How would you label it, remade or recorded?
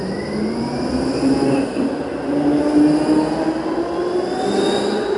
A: recorded